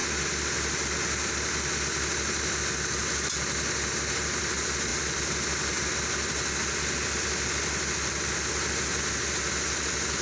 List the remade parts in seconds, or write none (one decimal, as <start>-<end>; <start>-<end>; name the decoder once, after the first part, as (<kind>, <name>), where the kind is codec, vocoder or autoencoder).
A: none